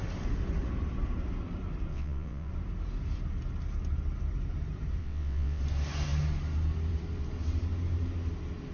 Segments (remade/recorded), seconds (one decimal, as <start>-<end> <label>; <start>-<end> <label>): 0.0-1.9 recorded; 1.9-2.5 remade; 2.5-5.0 recorded; 5.0-5.6 remade; 5.6-8.7 recorded